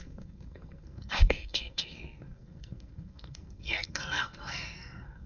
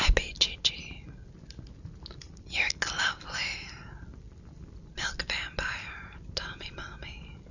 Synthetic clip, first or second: first